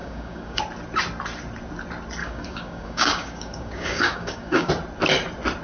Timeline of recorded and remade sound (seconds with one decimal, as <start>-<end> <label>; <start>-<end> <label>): 0.0-0.6 remade; 0.6-2.2 recorded; 2.2-4.7 remade; 4.7-5.6 recorded